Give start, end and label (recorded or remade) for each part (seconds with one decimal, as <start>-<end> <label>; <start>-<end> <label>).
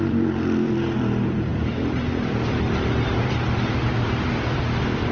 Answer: 0.0-5.1 remade